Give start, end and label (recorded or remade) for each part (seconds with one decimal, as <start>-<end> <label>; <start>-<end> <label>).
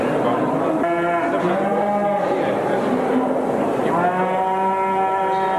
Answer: 0.0-5.6 recorded